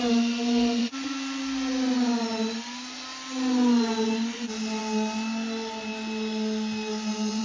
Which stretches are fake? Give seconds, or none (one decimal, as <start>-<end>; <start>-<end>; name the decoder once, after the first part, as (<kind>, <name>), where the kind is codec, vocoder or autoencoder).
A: none